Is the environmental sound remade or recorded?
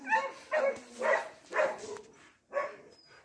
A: recorded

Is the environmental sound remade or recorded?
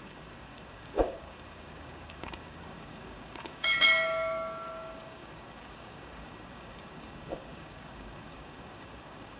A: remade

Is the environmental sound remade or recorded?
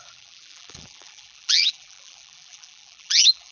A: remade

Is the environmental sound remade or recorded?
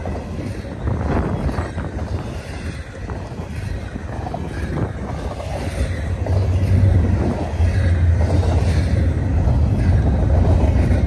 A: recorded